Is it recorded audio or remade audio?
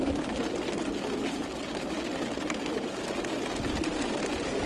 recorded